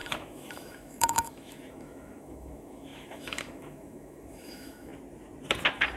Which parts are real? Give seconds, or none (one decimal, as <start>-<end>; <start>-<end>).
4.9-6.0